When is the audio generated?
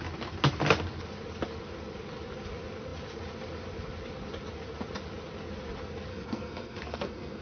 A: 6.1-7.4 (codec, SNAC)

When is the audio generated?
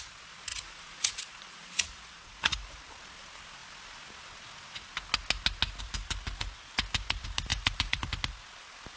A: 0.5-2.8 (vocoder, Vocos); 7.5-8.0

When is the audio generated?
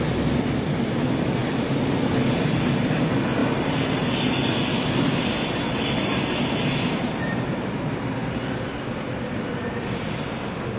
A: none